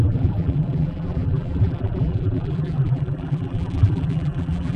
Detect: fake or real fake